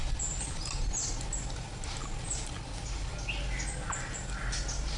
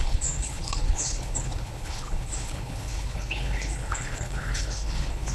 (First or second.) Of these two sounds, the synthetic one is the second